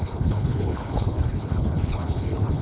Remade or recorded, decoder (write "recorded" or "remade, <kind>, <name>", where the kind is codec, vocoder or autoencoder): remade, codec, HILCodec